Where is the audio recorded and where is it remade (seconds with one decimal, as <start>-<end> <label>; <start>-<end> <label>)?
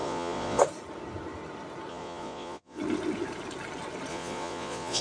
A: 0.0-0.6 remade; 0.6-1.9 recorded; 1.9-2.8 remade; 2.8-4.1 recorded; 4.1-5.0 remade